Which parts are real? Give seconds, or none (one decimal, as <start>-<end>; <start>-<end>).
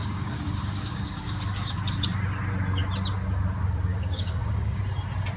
1.8-3.9; 4.8-5.4